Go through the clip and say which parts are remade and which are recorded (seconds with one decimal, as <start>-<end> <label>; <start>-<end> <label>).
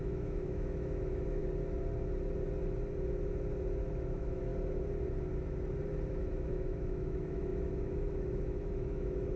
0.0-1.4 remade; 1.4-3.9 recorded; 3.9-4.5 remade; 4.5-6.1 recorded; 6.1-9.4 remade